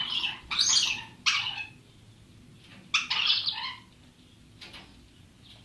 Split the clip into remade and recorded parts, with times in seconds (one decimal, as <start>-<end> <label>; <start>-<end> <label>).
0.0-5.6 recorded